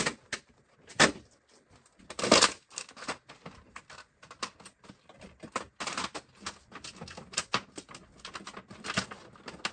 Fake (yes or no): no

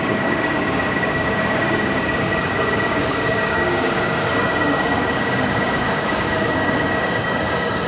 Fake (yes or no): yes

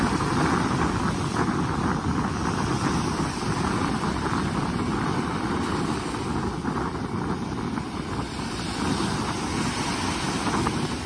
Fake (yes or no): no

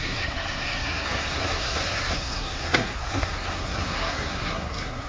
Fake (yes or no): yes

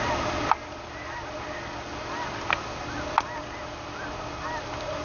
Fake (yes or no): no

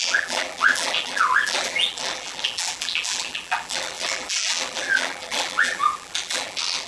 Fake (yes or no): yes